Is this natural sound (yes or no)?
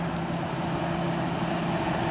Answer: yes